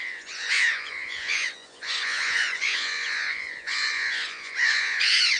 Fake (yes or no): yes